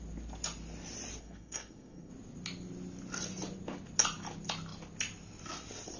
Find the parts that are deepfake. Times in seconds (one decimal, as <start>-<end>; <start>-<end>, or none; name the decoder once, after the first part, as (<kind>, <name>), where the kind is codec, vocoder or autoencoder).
1.2-2.1 (codec, SNAC)